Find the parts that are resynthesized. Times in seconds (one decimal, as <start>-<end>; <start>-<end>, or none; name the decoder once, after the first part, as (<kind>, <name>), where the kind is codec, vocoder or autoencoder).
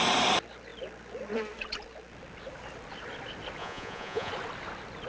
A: 3.6-4.3 (vocoder, Vocos)